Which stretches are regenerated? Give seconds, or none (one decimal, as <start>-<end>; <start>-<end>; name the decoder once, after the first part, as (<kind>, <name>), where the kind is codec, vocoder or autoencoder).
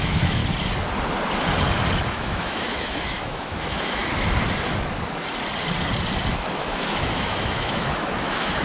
0.0-0.4 (autoencoder, DAC-VAE); 2.1-4.0; 6.3-8.6